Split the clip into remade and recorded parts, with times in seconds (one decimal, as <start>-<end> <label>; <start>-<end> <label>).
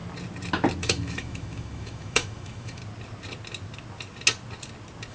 0.0-0.8 recorded; 0.8-2.8 remade; 2.8-5.1 recorded